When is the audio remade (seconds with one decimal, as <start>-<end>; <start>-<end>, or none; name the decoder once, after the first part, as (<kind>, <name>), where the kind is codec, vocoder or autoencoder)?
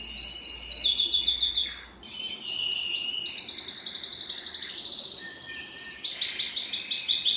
none